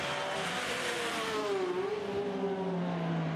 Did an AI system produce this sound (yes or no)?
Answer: no